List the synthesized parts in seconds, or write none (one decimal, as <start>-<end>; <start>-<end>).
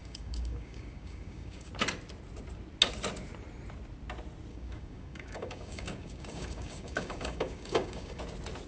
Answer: 0.0-1.7; 4.5-8.2